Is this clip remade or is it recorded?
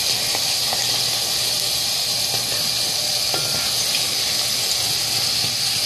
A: recorded